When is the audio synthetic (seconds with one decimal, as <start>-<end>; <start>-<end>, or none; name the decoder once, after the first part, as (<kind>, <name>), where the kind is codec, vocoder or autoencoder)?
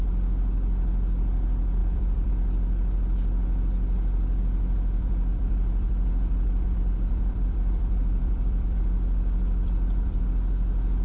1.8-2.3 (vocoder, BigVGAN v2); 5.0-10.2